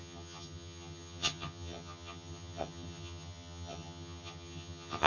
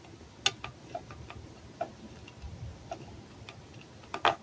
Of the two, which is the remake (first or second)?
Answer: first